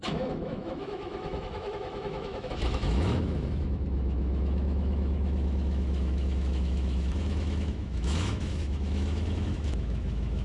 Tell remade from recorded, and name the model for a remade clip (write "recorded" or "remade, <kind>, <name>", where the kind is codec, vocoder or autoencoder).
remade, autoencoder, DAC-VAE